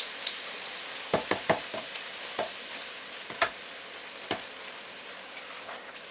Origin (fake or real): real